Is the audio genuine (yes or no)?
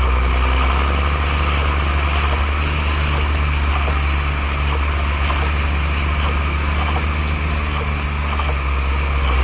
yes